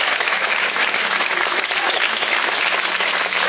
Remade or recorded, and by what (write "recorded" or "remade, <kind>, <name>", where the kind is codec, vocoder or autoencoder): remade, autoencoder, DAC-VAE